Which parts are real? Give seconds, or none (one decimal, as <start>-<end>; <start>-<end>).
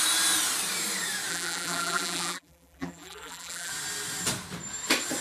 0.0-1.3; 3.7-5.2